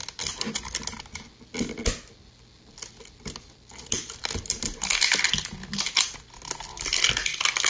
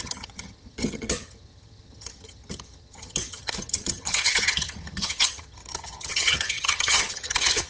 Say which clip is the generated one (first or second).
second